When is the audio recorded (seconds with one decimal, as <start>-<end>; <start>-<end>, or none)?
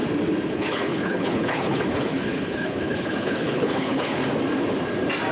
0.0-0.5; 4.2-5.3